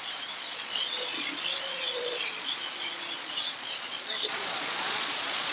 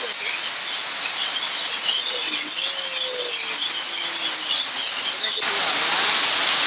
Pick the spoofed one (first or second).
first